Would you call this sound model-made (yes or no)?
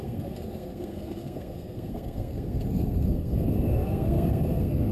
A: yes